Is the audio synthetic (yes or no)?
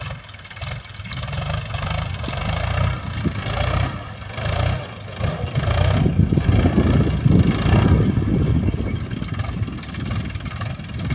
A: no